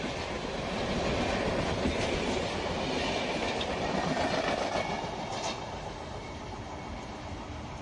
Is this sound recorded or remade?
recorded